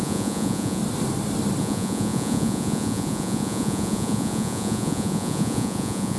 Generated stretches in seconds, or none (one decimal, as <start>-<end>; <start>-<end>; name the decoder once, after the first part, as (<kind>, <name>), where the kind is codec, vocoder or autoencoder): 0.0-0.8 (vocoder, Vocos); 1.6-6.2